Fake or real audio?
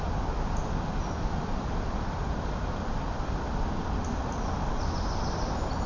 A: real